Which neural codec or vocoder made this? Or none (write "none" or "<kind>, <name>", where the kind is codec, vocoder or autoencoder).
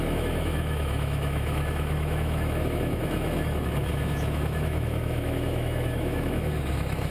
autoencoder, DAC-VAE